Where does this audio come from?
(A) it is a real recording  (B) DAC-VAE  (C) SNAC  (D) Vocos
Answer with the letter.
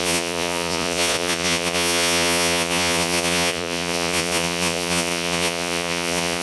D